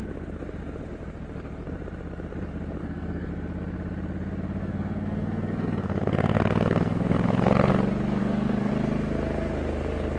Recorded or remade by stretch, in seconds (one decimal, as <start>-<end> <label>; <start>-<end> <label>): 0.0-2.8 recorded; 2.8-3.3 remade; 3.3-4.6 recorded; 4.6-7.7 remade; 7.7-8.2 recorded; 8.2-8.7 remade; 8.7-10.2 recorded